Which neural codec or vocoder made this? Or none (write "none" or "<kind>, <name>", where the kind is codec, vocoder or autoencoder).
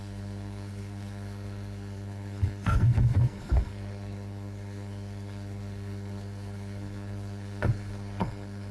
codec, SNAC